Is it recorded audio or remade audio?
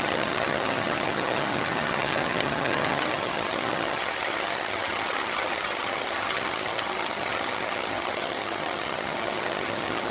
remade